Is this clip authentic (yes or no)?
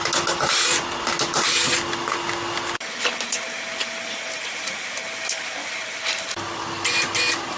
yes